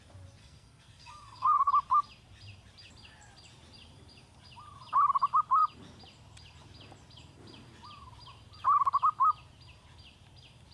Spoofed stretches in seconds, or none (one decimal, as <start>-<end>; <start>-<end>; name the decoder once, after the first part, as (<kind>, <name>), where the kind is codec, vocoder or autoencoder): 0.4-1.7 (codec, SNAC)

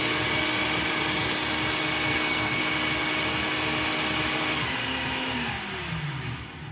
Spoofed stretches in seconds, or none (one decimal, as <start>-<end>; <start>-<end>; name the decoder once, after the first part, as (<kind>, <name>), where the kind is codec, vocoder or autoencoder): 2.1-2.6 (codec, SNAC)

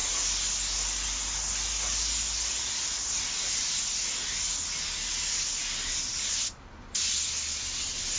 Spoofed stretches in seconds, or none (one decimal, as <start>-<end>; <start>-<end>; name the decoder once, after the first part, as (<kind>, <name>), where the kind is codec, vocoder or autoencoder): none

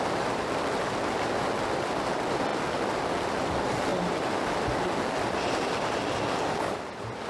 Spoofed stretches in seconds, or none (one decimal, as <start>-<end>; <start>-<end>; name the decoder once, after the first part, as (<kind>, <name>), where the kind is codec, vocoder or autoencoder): none

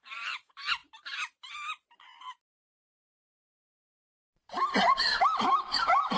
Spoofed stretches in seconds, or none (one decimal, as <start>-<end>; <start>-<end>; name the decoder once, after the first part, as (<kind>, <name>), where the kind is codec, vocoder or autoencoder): 0.0-3.4 (vocoder, BigVGAN v2); 4.9-6.2

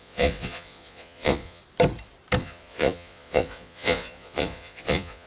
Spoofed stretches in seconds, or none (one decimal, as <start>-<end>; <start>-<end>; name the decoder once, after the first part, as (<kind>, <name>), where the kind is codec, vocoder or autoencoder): 0.0-1.6 (vocoder, Vocos); 2.4-5.3

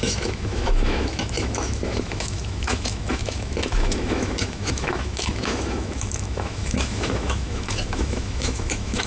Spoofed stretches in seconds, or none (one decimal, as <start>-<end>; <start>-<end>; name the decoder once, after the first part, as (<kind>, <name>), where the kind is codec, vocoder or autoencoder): 0.0-9.1 (autoencoder, DAC-VAE)